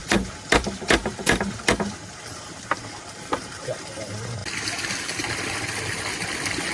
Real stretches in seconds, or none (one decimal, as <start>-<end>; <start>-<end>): 0.0-0.6; 4.4-5.0